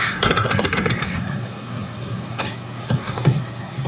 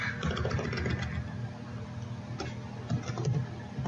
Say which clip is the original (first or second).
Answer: second